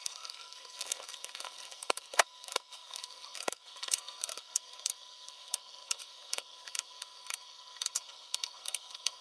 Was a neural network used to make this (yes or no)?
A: yes